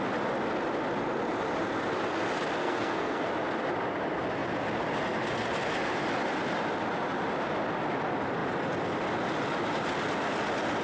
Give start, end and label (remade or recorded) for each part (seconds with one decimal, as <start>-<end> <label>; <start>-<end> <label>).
0.0-2.6 recorded; 2.6-3.3 remade; 3.3-10.8 recorded